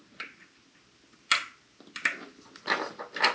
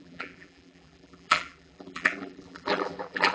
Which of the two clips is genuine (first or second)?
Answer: first